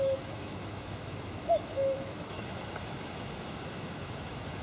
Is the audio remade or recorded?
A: remade